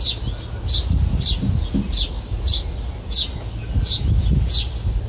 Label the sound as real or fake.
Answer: real